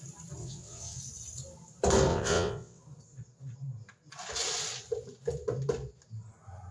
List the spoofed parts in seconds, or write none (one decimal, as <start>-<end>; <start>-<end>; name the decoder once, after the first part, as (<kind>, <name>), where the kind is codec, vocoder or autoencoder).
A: 0.4-1.0 (vocoder, WaveNeXt); 2.1-2.8